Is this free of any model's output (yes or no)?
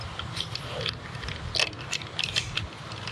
yes